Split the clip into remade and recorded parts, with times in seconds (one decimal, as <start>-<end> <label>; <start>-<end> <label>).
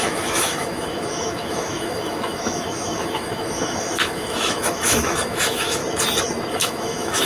0.0-5.8 remade; 5.8-6.5 recorded; 6.5-7.3 remade